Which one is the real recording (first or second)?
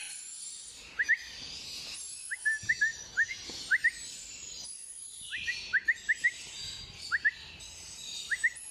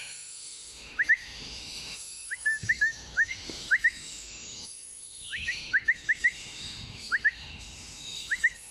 first